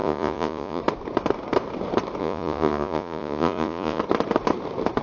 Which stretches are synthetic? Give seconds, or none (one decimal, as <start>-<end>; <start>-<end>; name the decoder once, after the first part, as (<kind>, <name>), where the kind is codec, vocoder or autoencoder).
0.0-0.8 (vocoder, Vocos); 2.2-4.0